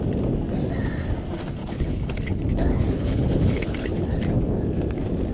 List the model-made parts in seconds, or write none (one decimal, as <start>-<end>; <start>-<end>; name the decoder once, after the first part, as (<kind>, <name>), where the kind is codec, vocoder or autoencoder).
1.6-4.2 (codec, HILCodec)